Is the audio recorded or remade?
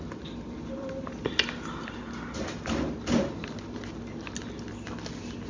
recorded